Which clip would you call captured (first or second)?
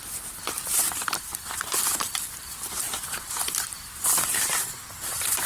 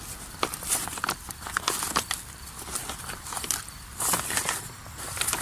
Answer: second